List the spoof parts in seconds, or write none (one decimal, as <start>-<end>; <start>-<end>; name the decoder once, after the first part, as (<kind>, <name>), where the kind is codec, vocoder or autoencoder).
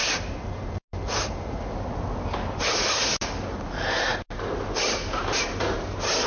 none